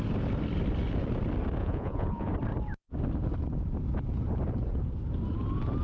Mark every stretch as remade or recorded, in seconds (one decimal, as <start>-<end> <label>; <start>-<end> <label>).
0.0-1.6 recorded; 1.6-2.3 remade; 2.3-5.8 recorded